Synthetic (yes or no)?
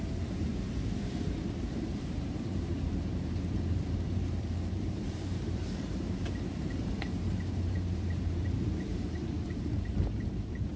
yes